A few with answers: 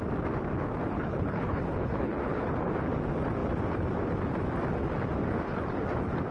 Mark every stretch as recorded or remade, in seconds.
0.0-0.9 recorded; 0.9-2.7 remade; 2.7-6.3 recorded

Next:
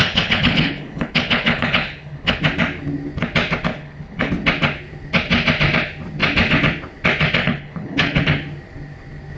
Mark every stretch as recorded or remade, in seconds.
0.0-2.4 remade; 2.4-3.7 recorded; 3.7-4.3 remade; 4.3-7.4 recorded; 7.4-8.2 remade; 8.2-9.4 recorded

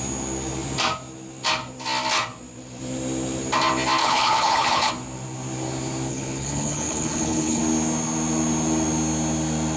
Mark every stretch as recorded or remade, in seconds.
0.0-4.0 recorded; 4.0-4.9 remade; 4.9-6.1 recorded; 6.1-7.6 remade; 7.6-9.8 recorded